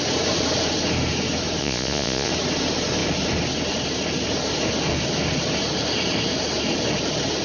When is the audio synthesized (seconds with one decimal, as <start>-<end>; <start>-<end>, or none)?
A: 1.6-2.3